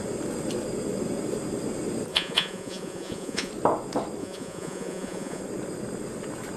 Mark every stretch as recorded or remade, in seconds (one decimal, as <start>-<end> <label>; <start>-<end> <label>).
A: 0.0-2.1 recorded; 2.1-3.5 remade; 3.5-4.2 recorded; 4.2-5.4 remade; 5.4-6.6 recorded